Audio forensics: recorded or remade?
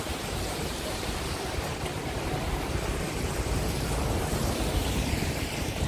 remade